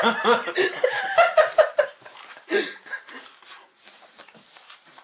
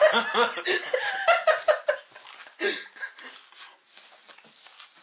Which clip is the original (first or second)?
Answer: second